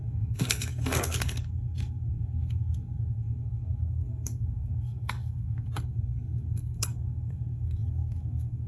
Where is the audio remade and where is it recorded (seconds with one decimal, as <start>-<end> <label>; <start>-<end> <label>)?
0.0-8.7 remade